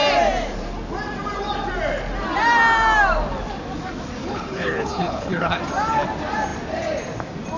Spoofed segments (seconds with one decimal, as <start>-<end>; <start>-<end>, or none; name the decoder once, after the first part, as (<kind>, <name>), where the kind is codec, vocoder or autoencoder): 4.2-5.6 (codec, HILCodec)